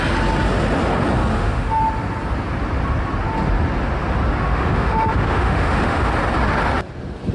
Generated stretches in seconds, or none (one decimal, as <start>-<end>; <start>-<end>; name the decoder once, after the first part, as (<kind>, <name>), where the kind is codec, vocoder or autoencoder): 1.3-1.8 (autoencoder, DAC-VAE); 4.5-6.1